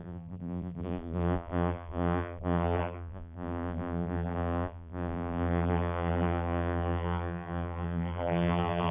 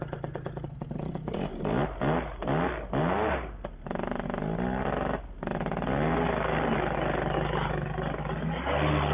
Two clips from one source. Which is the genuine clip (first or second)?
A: second